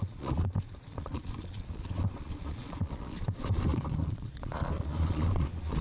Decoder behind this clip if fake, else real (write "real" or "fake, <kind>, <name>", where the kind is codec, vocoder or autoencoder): fake, vocoder, Vocos